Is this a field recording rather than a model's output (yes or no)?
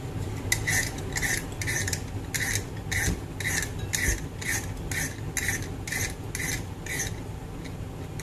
yes